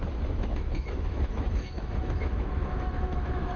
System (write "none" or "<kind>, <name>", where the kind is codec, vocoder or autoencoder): autoencoder, DAC-VAE